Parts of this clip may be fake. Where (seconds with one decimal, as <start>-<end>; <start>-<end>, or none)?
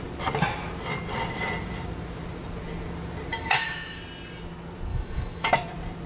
3.3-4.0; 4.9-5.5